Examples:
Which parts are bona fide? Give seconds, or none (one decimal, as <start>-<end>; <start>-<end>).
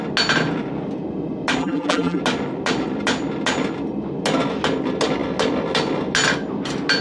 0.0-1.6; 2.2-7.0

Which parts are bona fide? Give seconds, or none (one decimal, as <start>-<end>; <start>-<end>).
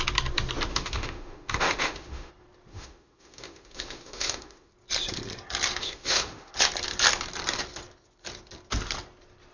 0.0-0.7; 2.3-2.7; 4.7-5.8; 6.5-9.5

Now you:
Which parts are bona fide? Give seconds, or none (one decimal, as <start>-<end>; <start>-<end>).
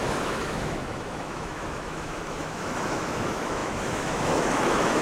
none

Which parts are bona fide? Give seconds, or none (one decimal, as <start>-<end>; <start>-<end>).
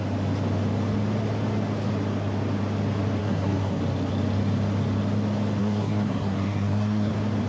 0.0-3.2; 3.8-5.6; 7.1-7.5